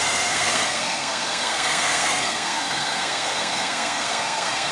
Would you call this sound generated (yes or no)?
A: yes